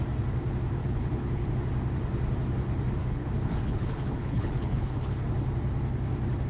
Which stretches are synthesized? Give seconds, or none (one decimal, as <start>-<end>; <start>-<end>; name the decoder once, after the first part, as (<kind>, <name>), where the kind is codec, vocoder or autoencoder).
0.8-1.5 (codec, HILCodec); 3.0-5.1